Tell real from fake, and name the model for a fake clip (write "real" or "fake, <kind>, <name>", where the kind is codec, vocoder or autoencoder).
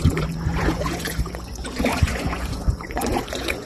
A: fake, vocoder, Vocos